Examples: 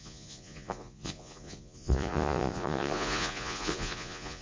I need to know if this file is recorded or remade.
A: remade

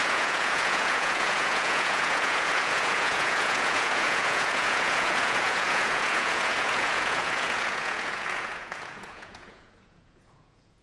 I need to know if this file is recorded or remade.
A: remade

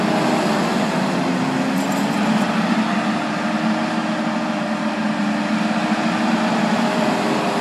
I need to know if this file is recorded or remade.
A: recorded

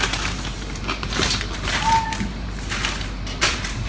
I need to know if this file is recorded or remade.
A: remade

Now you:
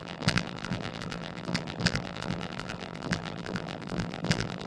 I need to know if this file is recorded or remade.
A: remade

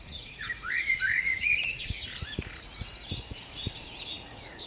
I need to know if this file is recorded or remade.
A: remade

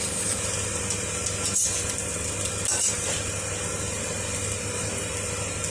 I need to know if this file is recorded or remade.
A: recorded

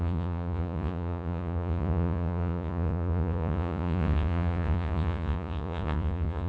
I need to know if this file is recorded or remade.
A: remade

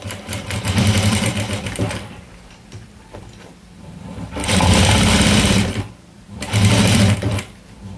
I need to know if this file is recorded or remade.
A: remade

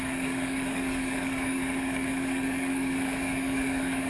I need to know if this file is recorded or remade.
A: remade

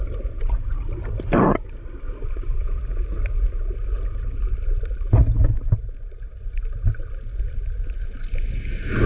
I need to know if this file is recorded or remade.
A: recorded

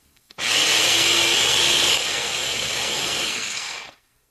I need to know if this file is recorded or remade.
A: remade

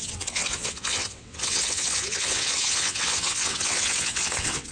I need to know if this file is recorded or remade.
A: remade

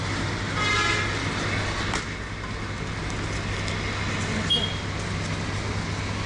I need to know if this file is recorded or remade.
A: recorded